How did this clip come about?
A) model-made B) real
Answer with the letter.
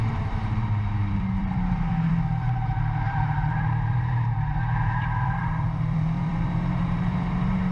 A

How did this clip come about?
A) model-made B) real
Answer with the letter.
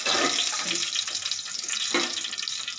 B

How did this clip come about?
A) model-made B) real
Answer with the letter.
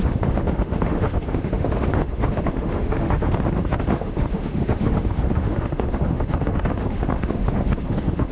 A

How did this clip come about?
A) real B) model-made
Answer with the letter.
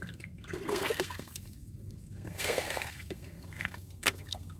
B